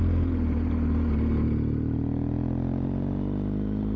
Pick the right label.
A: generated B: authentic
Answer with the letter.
B